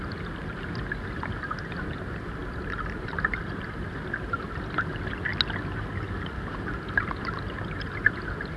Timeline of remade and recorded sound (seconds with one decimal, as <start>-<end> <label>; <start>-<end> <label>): 0.0-2.4 recorded; 2.4-3.6 remade; 3.6-8.6 recorded